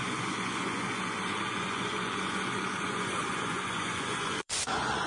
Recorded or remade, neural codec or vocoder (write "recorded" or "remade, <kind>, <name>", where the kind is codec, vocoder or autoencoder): remade, vocoder, Vocos